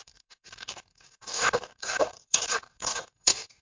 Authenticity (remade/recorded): remade